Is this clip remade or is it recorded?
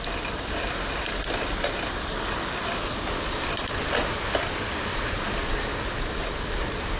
remade